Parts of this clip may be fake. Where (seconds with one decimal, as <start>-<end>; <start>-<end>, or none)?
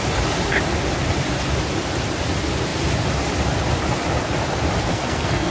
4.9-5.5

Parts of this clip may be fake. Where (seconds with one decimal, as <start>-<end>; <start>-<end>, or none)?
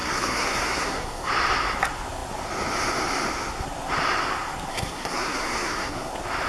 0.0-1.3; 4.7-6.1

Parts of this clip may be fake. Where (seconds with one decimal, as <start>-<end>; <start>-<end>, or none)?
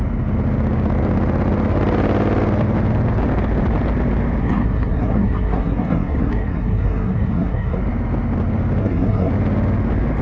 4.4-7.8; 8.8-9.3